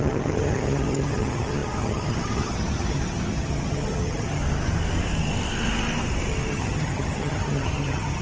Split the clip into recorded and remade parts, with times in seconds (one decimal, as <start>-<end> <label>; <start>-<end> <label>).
0.0-4.4 remade; 4.4-6.5 recorded; 6.5-8.2 remade